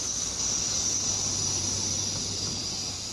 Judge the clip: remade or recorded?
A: recorded